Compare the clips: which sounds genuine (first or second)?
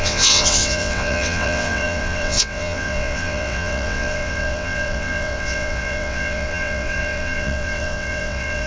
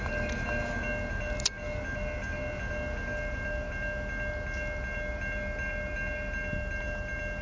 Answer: second